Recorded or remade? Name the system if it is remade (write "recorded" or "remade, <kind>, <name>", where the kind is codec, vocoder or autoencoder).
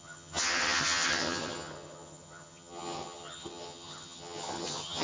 remade, vocoder, HiFi-GAN